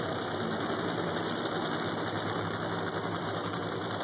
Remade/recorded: recorded